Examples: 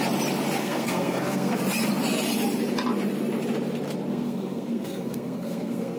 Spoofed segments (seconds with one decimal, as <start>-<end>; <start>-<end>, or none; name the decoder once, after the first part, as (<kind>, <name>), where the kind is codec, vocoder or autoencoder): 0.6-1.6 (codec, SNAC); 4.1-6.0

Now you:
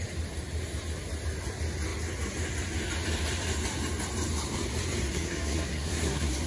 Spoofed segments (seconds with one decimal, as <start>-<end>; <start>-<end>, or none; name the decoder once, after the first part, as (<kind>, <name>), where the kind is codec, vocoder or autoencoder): 5.1-6.5 (codec, SNAC)

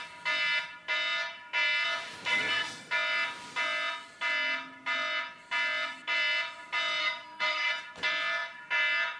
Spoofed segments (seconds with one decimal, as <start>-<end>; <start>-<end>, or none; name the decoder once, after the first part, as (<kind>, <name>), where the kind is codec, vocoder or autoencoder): 2.3-2.9 (codec, SNAC); 7.0-7.7

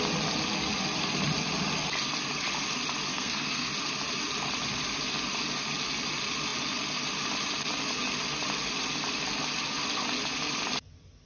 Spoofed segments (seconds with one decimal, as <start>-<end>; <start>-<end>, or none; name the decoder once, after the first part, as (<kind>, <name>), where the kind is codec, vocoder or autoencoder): 3.1-3.7 (codec, SNAC)

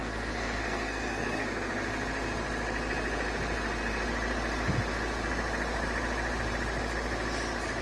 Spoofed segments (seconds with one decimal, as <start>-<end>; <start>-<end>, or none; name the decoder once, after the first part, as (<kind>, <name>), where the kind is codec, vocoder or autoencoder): 0.0-1.7 (codec, SNAC)

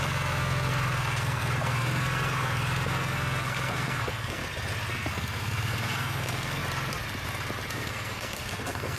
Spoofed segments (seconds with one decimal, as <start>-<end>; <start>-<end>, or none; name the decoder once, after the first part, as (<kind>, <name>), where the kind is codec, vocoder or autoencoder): 0.0-4.4 (codec, SNAC); 4.9-6.6; 7.7-9.0

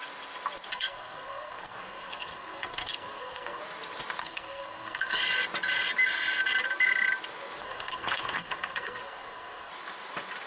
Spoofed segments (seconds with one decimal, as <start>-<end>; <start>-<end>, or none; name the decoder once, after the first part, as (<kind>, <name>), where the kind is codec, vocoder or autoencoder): 0.7-3.6 (codec, SNAC); 4.2-5.2; 7.6-9.7